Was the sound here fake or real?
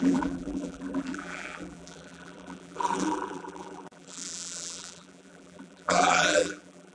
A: fake